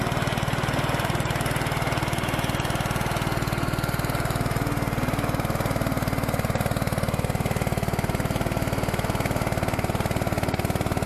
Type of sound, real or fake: real